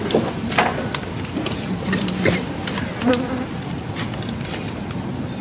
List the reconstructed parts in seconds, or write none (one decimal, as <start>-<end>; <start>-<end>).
none